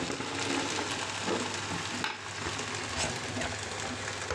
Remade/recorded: recorded